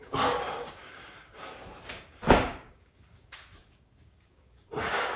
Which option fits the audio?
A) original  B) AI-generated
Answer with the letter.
B